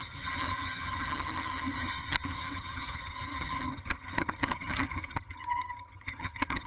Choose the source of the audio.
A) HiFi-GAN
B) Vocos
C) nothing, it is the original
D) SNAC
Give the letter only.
A